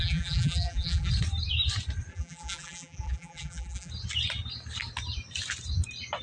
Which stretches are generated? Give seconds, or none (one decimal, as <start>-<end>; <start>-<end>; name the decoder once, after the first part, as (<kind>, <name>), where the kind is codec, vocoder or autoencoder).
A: 0.0-1.1 (vocoder, BigVGAN v2); 2.1-3.9